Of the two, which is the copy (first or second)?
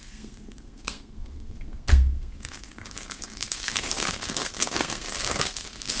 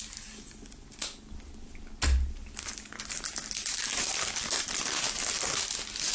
first